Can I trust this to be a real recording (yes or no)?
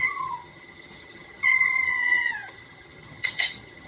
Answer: no